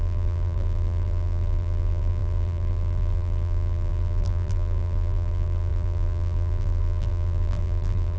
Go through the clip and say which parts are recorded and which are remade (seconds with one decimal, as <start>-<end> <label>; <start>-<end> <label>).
0.0-8.2 remade